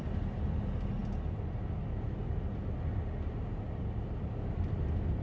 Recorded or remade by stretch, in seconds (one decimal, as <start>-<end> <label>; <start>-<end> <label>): 0.0-5.2 recorded